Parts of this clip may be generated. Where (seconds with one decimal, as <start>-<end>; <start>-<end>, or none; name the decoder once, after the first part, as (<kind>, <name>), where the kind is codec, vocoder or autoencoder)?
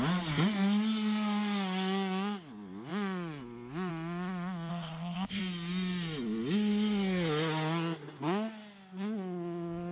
4.7-5.4 (codec, ZipCodec)